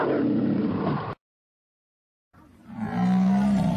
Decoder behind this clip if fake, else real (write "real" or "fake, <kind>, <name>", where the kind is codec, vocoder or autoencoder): fake, vocoder, BigVGAN v2